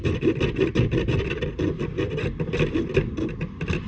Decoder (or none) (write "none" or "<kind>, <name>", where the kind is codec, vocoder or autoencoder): none